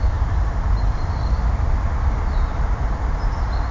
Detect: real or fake fake